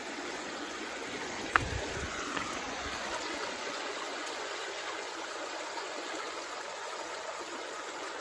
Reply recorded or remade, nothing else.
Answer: remade